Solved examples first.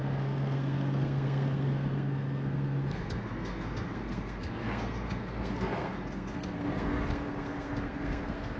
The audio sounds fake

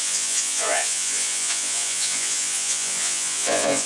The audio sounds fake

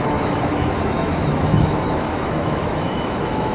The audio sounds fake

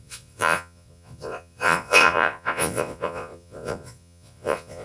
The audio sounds fake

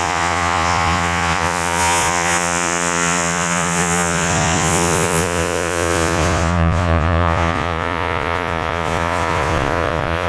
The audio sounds fake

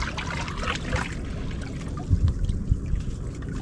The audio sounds real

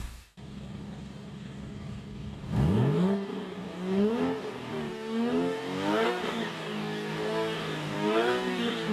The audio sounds fake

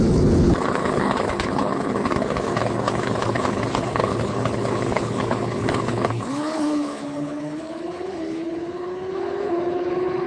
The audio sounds fake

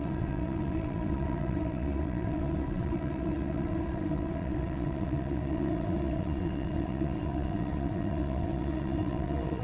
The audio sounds fake